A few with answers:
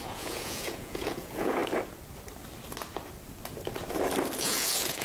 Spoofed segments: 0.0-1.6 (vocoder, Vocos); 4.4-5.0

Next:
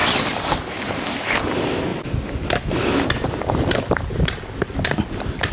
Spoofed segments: 0.0-1.3 (vocoder, BigVGAN v2)